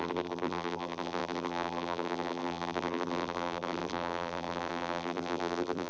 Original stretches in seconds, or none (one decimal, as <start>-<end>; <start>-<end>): none

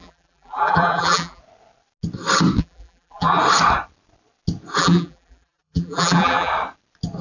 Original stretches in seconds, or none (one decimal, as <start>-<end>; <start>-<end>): 1.4-2.6; 3.4-4.8; 6.5-7.2

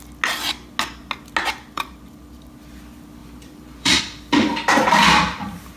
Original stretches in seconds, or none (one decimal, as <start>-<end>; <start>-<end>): 0.0-1.4; 2.5-3.2; 4.0-5.8

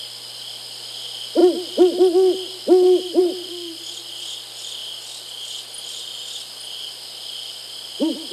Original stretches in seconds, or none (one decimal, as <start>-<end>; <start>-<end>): 0.0-8.3